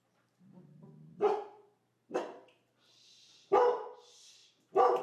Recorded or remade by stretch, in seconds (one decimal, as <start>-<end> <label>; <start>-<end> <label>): 0.0-5.0 remade